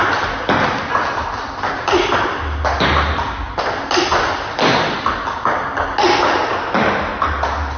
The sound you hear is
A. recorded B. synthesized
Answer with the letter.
A